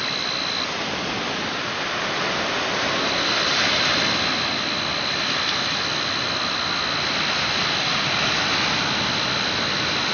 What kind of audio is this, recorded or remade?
recorded